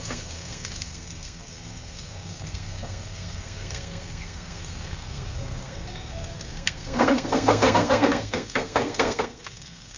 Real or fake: fake